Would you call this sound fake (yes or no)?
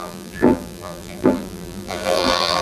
yes